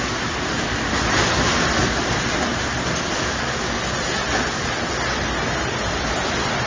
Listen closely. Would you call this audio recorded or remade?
remade